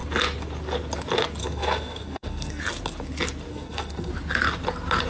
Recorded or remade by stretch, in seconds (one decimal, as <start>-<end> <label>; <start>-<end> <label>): 0.0-1.4 recorded; 1.4-2.6 remade; 2.6-3.5 recorded; 3.5-4.1 remade; 4.1-5.1 recorded